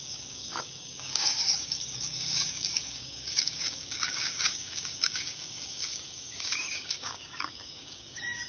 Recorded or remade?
remade